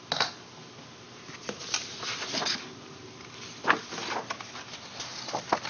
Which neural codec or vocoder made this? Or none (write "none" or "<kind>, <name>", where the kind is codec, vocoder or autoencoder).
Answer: none